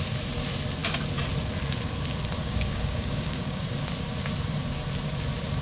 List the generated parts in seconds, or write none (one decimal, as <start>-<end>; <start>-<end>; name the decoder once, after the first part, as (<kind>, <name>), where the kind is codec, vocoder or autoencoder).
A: 2.4-3.8 (codec, DAC)